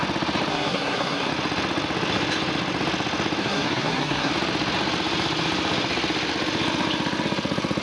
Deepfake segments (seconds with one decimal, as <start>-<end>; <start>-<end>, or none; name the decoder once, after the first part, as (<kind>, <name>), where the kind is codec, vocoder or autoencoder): 0.5-1.3 (codec, SNAC); 3.4-4.3